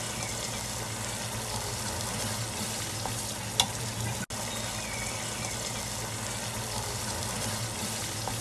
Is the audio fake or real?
real